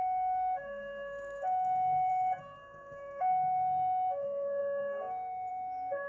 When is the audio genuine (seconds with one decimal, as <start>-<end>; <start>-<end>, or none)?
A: none